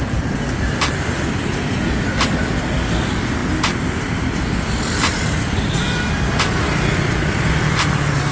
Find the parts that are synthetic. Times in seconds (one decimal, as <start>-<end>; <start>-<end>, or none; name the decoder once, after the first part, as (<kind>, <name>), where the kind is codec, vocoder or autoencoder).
none